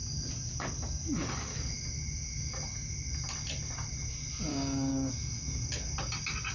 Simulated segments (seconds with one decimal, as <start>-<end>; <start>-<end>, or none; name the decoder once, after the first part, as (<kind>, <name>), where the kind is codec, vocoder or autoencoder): 4.5-5.1 (codec, DAC)